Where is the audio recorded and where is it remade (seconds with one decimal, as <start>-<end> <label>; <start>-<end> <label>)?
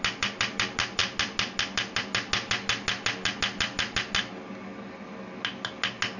0.0-6.2 recorded